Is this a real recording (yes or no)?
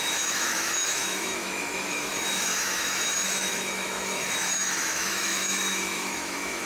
no